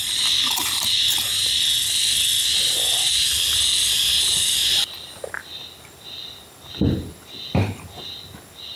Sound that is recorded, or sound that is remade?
recorded